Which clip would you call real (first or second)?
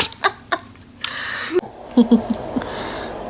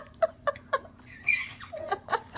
first